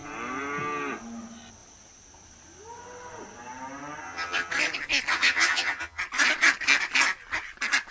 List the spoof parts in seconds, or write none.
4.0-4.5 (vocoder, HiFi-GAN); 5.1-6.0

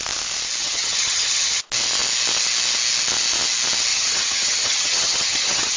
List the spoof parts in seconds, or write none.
0.6-1.6 (vocoder, HiFi-GAN); 3.9-5.8

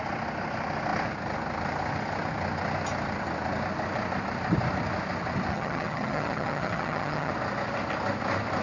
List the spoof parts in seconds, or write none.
5.5-7.3 (vocoder, HiFi-GAN)

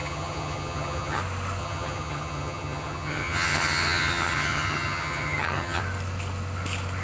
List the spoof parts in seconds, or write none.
0.0-1.2 (vocoder, HiFi-GAN); 1.6-5.8

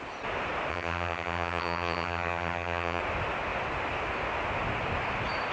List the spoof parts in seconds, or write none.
0.7-3.0 (vocoder, HiFi-GAN)

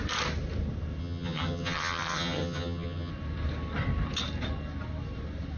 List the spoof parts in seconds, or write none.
1.0-3.1 (vocoder, HiFi-GAN)